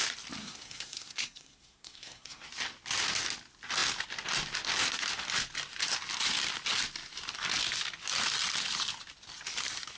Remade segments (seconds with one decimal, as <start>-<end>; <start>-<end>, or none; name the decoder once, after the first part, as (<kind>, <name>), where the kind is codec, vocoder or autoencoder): 0.4-2.5 (codec, SNAC)